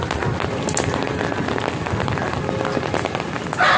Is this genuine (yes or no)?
yes